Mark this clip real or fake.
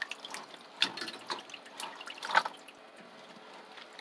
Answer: real